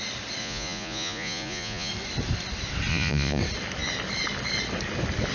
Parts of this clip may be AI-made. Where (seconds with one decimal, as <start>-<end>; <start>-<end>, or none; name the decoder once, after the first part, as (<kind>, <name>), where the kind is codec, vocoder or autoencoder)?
0.4-1.9 (vocoder, Vocos); 2.9-3.4